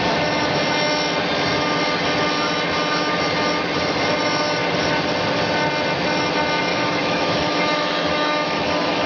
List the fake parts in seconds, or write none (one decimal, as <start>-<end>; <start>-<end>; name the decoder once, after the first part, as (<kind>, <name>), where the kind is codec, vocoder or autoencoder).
6.7-9.1 (autoencoder, DAC-VAE)